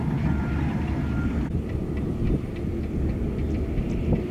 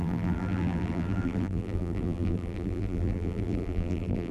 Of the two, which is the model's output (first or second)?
second